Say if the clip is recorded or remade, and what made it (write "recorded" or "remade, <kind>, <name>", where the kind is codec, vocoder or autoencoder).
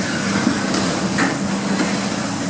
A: recorded